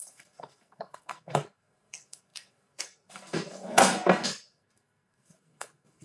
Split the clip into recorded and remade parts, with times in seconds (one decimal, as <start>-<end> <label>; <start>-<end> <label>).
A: 0.0-6.0 remade